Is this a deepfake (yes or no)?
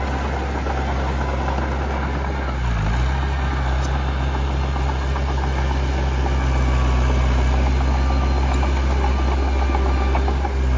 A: no